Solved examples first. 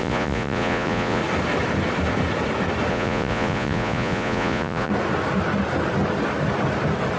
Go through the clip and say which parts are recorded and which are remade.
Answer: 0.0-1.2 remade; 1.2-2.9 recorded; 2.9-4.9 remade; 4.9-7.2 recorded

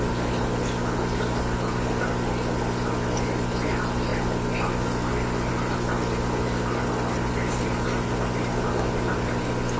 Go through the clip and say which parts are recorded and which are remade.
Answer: 0.0-9.8 recorded

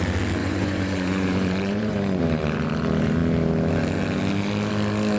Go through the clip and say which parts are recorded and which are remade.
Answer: 0.0-0.4 recorded; 0.4-2.2 remade; 2.2-5.2 recorded

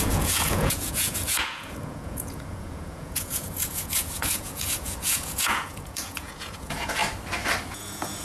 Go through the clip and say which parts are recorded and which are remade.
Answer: 0.0-7.0 remade; 7.0-7.7 recorded; 7.7-8.2 remade

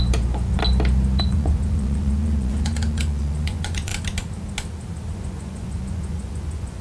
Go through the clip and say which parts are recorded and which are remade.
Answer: 0.0-0.6 remade; 0.6-1.2 recorded; 1.2-3.9 remade; 3.9-5.1 recorded; 5.1-6.8 remade

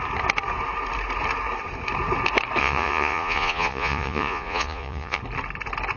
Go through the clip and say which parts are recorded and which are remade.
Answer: 0.0-2.6 recorded; 2.6-5.2 remade; 5.2-6.0 recorded